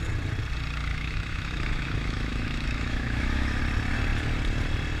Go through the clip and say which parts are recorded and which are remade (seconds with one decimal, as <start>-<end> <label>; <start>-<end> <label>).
0.0-0.9 recorded; 0.9-3.6 remade; 3.6-5.0 recorded